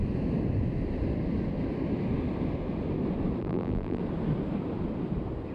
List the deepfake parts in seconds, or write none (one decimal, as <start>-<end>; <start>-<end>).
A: 3.4-4.0